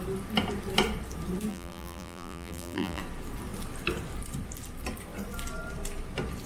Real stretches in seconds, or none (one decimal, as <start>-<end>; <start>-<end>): 0.0-1.5; 3.0-6.5